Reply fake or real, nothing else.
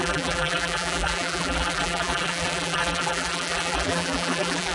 fake